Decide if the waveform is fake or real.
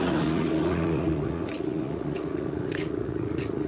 fake